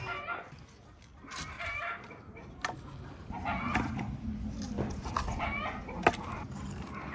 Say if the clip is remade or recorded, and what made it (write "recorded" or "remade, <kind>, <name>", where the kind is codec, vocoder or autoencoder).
recorded